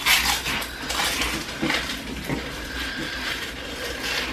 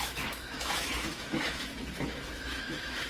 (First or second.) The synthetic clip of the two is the second